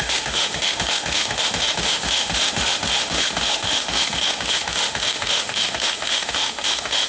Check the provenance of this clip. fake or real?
fake